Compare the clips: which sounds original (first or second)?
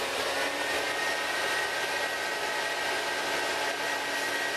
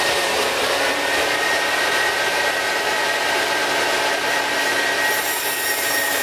first